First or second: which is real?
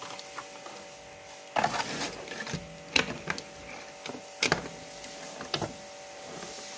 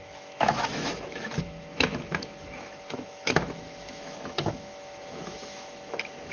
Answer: first